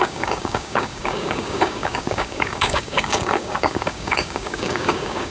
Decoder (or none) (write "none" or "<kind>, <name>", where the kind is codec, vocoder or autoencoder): codec, DAC